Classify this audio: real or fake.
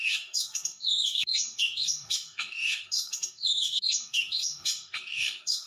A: fake